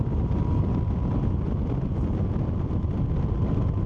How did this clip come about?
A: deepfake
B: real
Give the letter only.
B